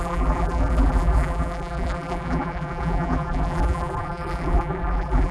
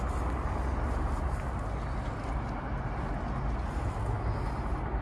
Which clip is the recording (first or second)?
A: second